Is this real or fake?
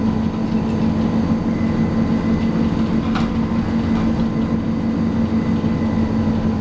real